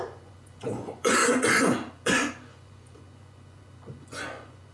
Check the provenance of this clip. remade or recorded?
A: remade